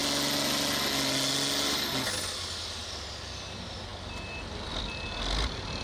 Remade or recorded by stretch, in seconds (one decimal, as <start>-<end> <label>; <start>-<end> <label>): 0.0-5.8 recorded